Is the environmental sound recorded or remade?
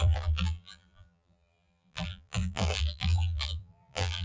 remade